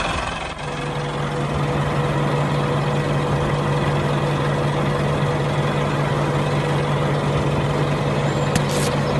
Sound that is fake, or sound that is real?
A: real